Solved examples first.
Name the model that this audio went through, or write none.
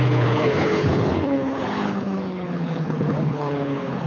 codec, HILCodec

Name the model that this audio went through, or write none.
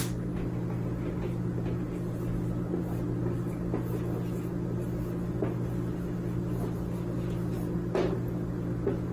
none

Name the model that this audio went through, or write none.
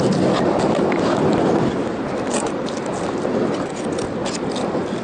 none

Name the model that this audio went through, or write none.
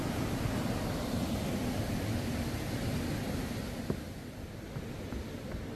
none